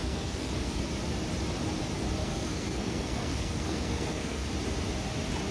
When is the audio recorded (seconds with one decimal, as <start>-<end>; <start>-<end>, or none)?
0.8-2.2; 4.5-5.5